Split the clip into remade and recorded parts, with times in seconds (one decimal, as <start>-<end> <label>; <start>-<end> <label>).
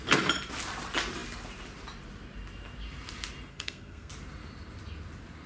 0.0-3.5 recorded; 3.5-4.1 remade; 4.1-5.5 recorded